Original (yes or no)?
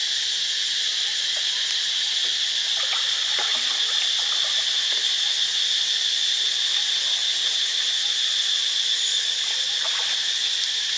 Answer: yes